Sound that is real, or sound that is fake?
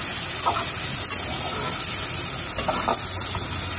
real